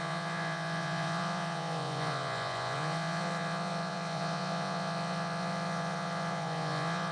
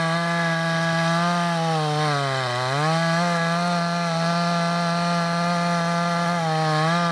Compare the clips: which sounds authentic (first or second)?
second